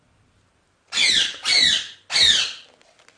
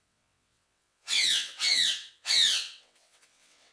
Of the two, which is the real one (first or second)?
first